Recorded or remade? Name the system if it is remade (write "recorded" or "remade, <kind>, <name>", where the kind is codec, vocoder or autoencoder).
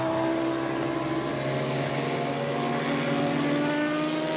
recorded